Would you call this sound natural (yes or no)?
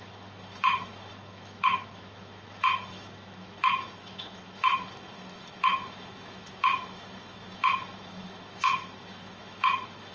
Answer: no